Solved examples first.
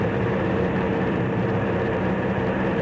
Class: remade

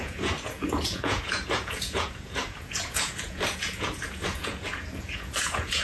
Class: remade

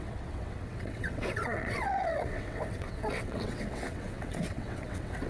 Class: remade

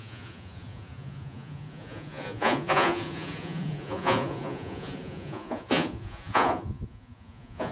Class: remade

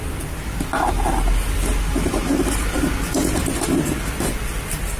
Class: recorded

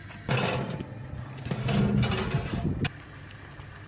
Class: recorded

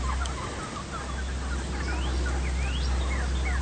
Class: recorded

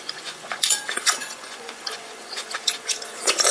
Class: remade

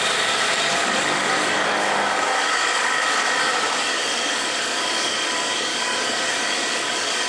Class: remade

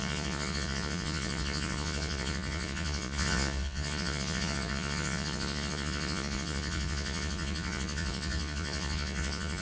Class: remade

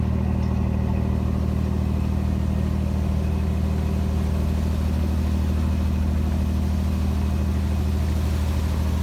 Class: recorded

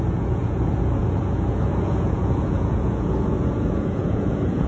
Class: remade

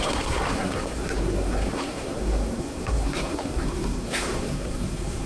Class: remade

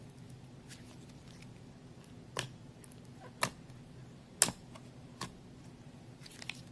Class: recorded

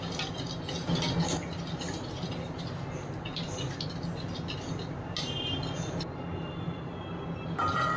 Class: recorded